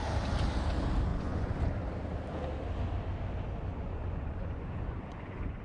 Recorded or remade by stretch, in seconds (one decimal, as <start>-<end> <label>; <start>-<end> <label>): 0.0-1.1 recorded; 1.1-1.6 remade; 1.6-3.7 recorded; 3.7-5.6 remade